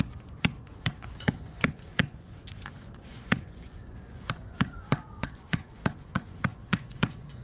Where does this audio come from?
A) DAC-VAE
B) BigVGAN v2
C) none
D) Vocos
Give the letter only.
D